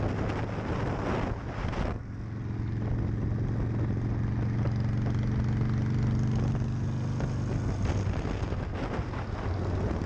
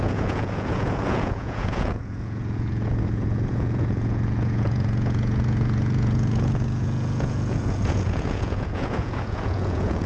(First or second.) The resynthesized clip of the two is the second